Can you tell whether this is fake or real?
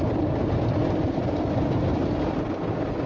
real